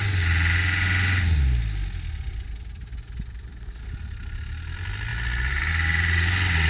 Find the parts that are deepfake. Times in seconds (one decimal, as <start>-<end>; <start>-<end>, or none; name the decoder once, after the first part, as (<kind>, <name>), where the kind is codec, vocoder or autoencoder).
none